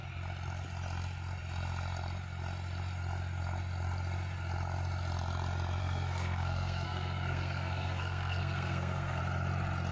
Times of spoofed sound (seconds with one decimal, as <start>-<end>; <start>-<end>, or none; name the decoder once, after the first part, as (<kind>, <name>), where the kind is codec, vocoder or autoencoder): 5.8-9.2 (codec, SNAC)